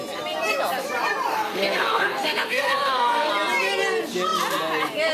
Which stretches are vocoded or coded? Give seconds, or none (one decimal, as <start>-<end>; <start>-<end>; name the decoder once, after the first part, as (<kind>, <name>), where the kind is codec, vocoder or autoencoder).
1.3-3.3 (codec, SNAC)